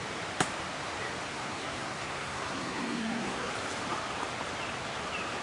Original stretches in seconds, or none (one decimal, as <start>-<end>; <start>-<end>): 0.0-1.3; 3.5-5.4